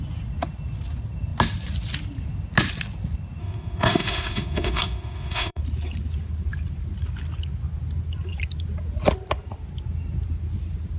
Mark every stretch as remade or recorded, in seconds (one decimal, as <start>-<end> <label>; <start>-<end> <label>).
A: 0.0-3.4 recorded; 3.4-5.6 remade; 5.6-11.0 recorded